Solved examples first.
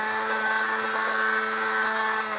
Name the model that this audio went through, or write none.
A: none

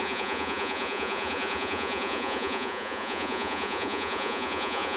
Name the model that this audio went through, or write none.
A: vocoder, Vocos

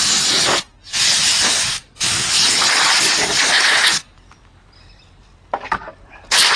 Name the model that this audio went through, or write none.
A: none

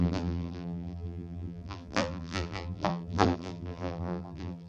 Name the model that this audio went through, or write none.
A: vocoder, BigVGAN v2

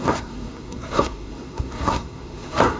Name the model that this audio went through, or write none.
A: codec, SNAC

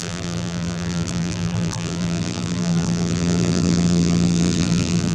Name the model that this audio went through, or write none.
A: vocoder, BigVGAN v2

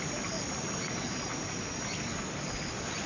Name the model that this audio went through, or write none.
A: none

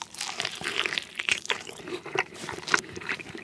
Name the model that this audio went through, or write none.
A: vocoder, BigVGAN v2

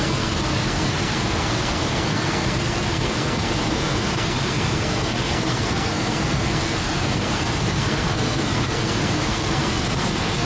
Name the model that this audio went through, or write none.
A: codec, SNAC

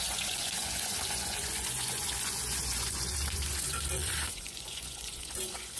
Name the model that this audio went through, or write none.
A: vocoder, Vocos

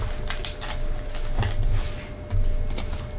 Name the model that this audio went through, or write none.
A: none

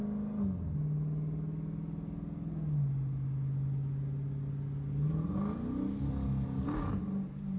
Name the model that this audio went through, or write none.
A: none